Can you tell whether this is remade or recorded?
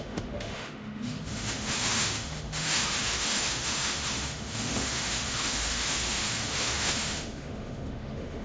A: remade